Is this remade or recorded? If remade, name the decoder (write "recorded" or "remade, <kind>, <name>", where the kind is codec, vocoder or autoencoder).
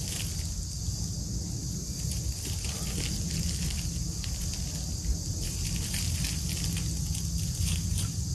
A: recorded